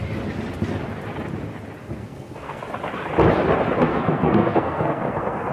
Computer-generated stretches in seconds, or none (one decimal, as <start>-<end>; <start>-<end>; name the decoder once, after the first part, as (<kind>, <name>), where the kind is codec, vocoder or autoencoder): 1.8-2.6 (codec, SNAC); 3.9-5.5